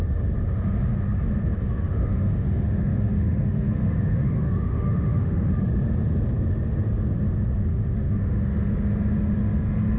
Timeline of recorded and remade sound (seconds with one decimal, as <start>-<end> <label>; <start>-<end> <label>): 0.0-1.6 recorded; 1.6-5.5 remade; 5.5-7.7 recorded; 7.7-8.4 remade; 8.4-10.0 recorded